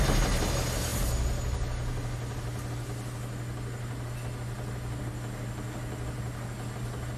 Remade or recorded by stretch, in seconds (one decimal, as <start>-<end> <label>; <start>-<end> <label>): 0.0-7.2 recorded